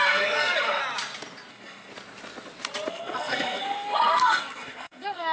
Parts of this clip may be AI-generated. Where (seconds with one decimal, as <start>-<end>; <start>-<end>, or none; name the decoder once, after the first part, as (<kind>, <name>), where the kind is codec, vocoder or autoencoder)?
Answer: 0.0-0.8 (codec, SNAC); 1.5-1.9; 2.9-5.3